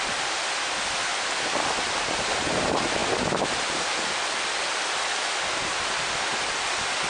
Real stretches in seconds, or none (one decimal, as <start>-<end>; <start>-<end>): 0.0-7.1